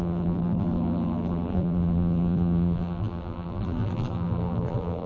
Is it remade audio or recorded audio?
remade